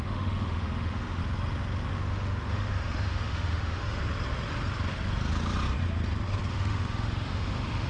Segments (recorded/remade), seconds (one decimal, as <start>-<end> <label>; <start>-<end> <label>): 0.0-1.2 remade; 1.2-1.9 recorded; 1.9-4.0 remade; 4.0-6.5 recorded; 6.5-7.9 remade